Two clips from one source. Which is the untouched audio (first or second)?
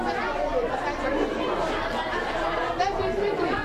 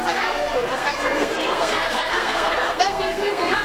first